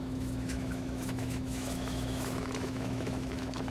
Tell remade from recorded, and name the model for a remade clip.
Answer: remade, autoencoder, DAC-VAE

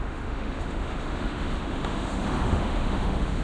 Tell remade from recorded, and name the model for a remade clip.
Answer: remade, autoencoder, DAC-VAE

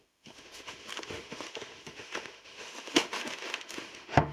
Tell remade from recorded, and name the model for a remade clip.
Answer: remade, autoencoder, DAC-VAE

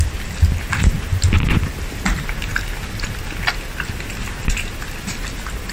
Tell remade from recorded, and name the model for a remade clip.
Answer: recorded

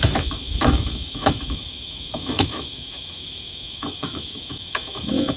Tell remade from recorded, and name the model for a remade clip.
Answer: remade, autoencoder, DAC-VAE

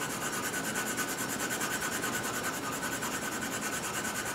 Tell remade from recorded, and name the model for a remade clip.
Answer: recorded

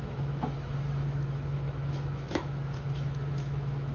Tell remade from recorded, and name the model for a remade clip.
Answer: remade, autoencoder, DAC-VAE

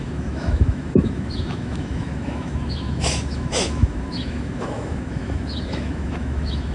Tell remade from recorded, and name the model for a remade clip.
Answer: remade, autoencoder, DAC-VAE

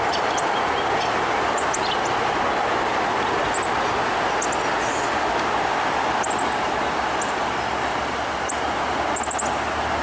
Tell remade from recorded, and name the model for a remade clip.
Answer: recorded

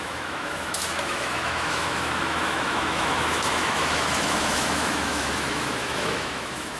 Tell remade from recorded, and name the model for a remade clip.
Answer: remade, autoencoder, DAC-VAE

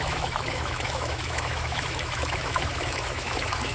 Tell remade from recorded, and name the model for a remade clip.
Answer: remade, autoencoder, DAC-VAE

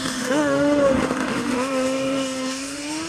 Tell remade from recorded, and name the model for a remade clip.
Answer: remade, autoencoder, DAC-VAE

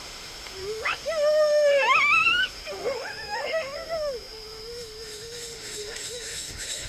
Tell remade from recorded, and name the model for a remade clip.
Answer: remade, autoencoder, DAC-VAE